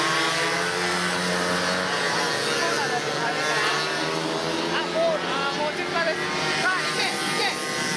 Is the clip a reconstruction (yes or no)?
no